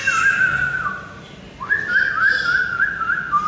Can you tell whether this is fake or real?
real